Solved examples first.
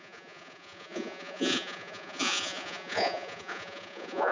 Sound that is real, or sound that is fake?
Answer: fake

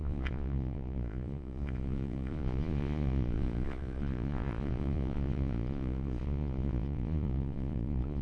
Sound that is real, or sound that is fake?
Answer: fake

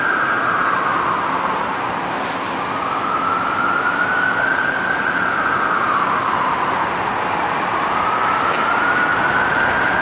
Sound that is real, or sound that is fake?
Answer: real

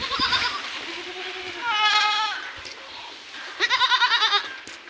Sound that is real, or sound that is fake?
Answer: real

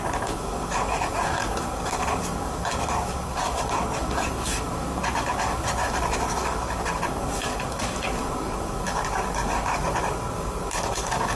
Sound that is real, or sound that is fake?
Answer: fake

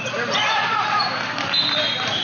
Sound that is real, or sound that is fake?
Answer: fake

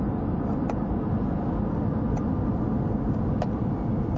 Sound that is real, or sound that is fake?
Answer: real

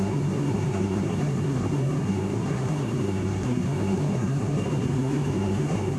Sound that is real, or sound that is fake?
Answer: fake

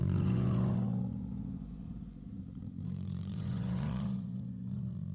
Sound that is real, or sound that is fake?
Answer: fake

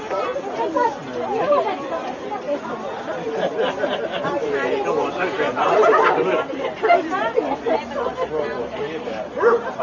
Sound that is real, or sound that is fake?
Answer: real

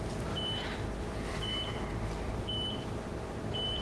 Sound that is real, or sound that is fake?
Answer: fake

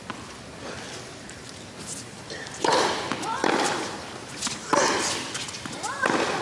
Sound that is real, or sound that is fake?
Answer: real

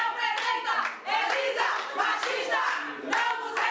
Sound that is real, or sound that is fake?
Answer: real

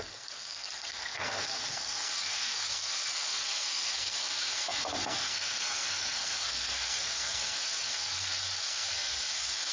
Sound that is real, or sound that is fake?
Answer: fake